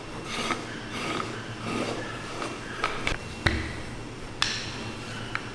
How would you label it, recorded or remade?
recorded